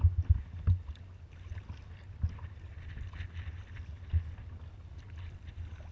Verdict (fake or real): real